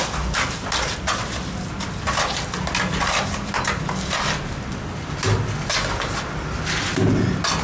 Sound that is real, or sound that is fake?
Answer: real